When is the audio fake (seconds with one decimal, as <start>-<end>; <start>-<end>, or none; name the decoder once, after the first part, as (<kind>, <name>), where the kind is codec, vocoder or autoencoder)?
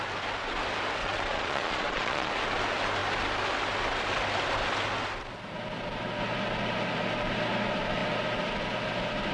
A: 1.0-2.3 (vocoder, Vocos)